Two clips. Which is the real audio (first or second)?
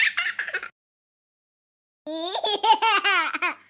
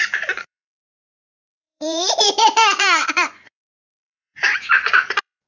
first